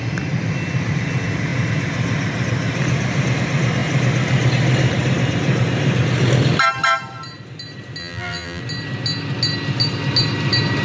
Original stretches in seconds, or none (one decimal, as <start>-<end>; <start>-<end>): 0.0-8.0; 8.6-10.8